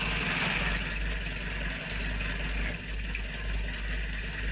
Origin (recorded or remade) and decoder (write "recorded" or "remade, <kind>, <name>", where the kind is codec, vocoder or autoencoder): recorded